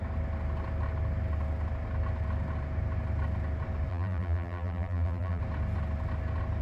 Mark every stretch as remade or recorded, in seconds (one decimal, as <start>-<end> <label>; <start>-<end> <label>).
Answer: 0.0-3.9 recorded; 3.9-5.4 remade; 5.4-6.6 recorded